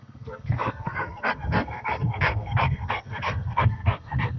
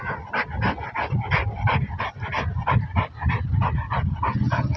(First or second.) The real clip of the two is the second